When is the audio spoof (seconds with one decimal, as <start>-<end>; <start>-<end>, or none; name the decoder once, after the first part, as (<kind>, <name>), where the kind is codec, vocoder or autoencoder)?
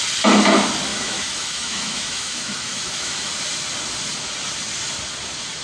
0.9-3.3 (autoencoder, DAC-VAE)